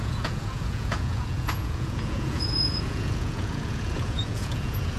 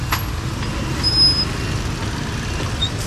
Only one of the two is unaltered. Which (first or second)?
second